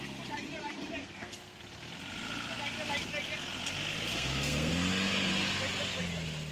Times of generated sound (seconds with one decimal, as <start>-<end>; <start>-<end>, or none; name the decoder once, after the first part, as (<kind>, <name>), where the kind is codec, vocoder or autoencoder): 1.0-1.6 (codec, SNAC); 4.1-4.7